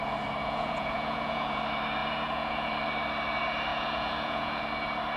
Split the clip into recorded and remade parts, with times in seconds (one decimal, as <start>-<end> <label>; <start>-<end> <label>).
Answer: 0.0-0.4 recorded; 0.4-1.6 remade; 1.6-2.0 recorded; 2.0-2.7 remade; 2.7-3.7 recorded; 3.7-4.6 remade; 4.6-5.2 recorded